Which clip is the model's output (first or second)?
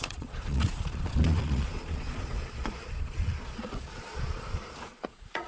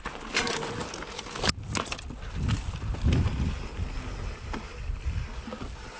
first